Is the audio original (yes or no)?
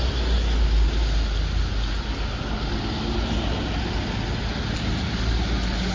yes